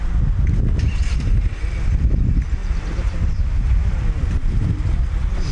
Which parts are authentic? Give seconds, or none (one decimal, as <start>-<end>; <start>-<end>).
0.0-2.6; 4.2-5.5